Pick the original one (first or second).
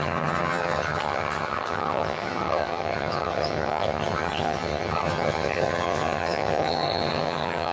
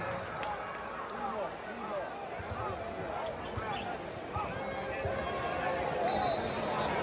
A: second